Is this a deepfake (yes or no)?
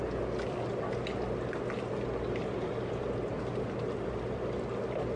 no